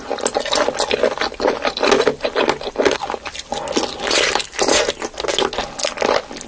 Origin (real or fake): real